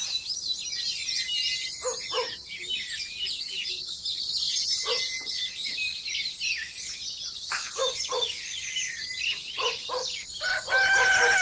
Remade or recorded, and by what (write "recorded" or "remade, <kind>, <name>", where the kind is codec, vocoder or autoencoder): recorded